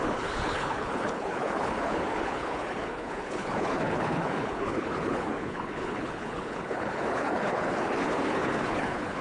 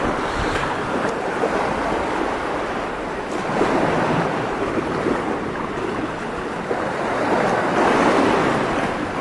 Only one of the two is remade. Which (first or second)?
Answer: first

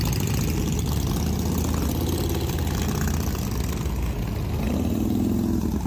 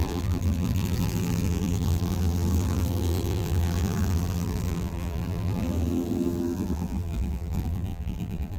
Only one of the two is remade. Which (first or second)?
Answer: second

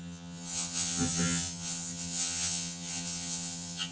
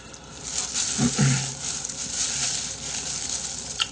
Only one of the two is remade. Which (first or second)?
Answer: first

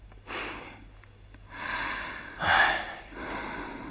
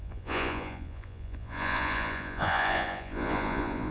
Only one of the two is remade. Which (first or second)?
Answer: second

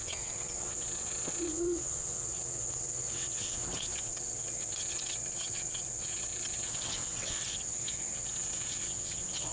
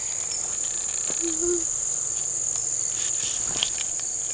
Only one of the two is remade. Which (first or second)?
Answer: first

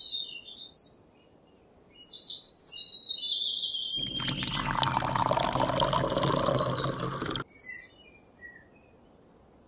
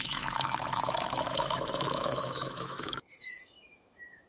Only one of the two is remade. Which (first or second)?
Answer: second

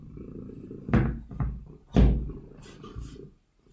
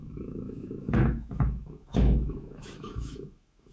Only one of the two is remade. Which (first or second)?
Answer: second